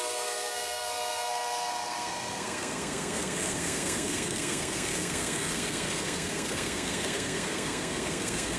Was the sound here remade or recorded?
remade